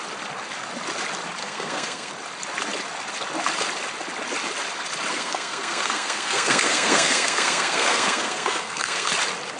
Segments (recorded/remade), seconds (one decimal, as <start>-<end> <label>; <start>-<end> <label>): 0.0-1.4 recorded; 1.4-2.1 remade; 2.1-5.1 recorded; 5.1-9.1 remade; 9.1-9.6 recorded